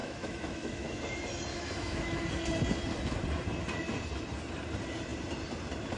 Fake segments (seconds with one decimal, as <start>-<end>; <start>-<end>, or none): 0.0-1.0; 1.5-2.2